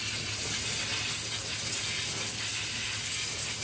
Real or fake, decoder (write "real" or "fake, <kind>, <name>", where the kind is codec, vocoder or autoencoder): real